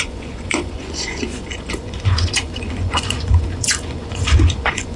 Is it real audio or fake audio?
fake